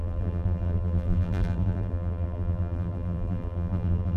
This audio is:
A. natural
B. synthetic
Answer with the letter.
B